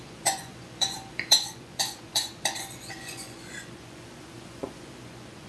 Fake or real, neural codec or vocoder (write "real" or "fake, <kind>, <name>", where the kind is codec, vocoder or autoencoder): fake, vocoder, Vocos